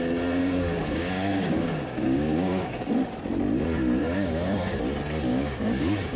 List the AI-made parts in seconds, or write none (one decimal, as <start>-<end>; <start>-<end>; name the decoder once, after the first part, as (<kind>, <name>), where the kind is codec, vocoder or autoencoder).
0.4-2.9 (codec, DAC); 4.0-4.8; 5.3-6.2